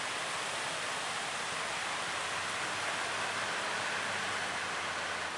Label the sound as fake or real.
fake